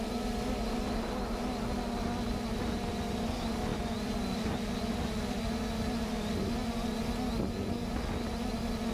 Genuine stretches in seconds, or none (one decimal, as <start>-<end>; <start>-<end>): 0.0-8.9